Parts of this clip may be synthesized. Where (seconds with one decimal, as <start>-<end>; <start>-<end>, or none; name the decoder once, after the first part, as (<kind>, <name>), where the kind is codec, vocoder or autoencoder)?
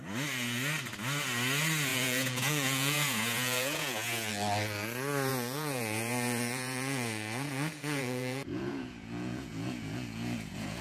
1.9-4.3 (vocoder, Vocos); 5.3-10.8